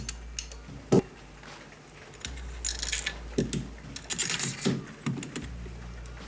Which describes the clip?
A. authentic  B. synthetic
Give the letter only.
A